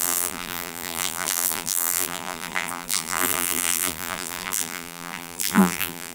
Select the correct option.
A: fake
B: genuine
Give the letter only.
A